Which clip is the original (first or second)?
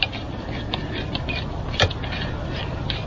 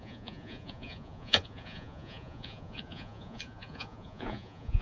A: first